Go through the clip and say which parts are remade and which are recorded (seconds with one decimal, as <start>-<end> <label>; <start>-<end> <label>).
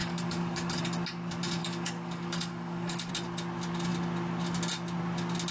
0.0-0.8 remade; 0.8-1.6 recorded; 1.6-3.1 remade; 3.1-5.5 recorded